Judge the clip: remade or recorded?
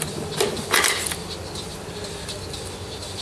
recorded